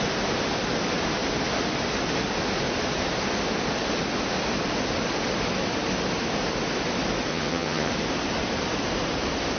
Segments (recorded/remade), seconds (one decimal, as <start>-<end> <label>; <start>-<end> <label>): 0.0-7.3 recorded; 7.3-7.9 remade; 7.9-9.6 recorded